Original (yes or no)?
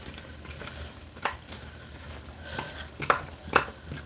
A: yes